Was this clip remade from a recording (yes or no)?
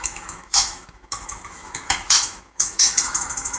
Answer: yes